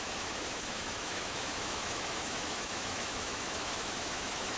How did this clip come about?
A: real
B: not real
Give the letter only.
B